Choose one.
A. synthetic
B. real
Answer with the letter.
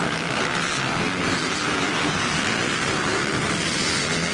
B